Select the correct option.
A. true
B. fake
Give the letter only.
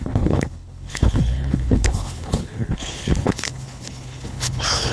B